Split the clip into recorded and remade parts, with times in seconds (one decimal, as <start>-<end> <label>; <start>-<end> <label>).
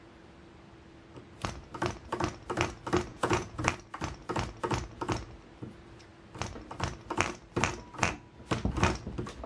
0.0-3.1 recorded; 3.1-3.6 remade; 3.6-9.5 recorded